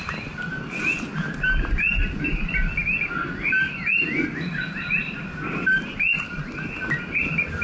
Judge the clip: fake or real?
real